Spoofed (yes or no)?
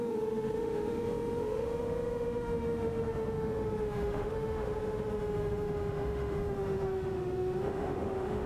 yes